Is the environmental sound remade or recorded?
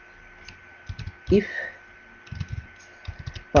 recorded